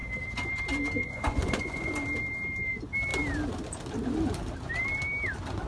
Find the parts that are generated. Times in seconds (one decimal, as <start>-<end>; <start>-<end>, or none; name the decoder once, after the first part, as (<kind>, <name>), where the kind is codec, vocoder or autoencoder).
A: 1.0-1.9 (vocoder, Vocos)